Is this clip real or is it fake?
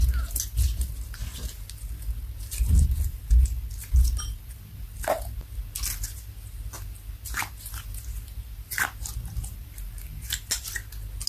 real